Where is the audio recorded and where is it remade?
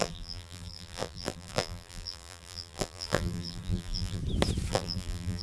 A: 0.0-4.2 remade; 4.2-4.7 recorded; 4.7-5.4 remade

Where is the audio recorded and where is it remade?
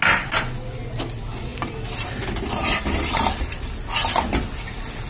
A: 0.0-5.1 recorded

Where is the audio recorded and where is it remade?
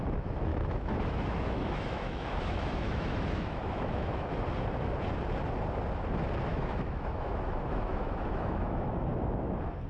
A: 0.0-0.5 recorded; 0.5-4.3 remade; 4.3-6.5 recorded; 6.5-9.0 remade; 9.0-9.9 recorded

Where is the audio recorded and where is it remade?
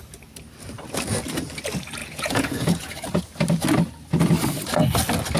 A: 0.0-2.0 recorded; 2.0-3.2 remade; 3.2-5.4 recorded